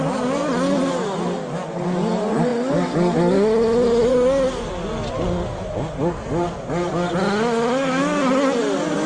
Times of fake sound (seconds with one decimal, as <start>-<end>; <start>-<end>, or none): none